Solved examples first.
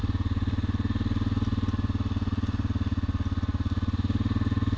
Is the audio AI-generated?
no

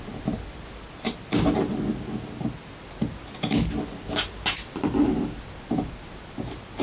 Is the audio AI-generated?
no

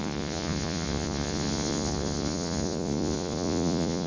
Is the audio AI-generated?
yes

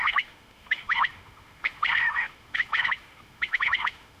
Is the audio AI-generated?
yes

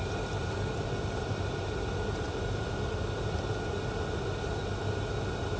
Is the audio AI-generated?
no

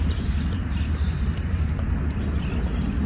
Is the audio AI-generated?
no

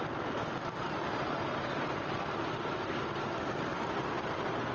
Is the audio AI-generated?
no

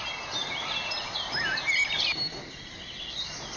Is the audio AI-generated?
no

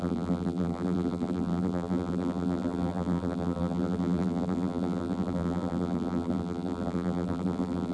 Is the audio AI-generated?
yes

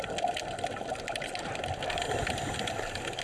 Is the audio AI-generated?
no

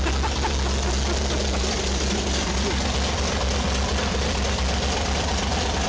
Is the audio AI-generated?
no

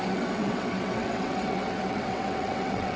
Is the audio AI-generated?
yes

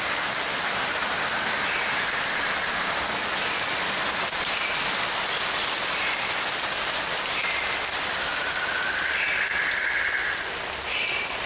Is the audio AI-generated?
no